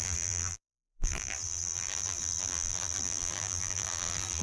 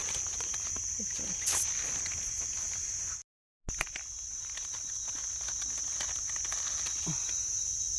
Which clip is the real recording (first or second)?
second